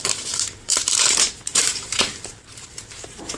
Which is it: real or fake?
fake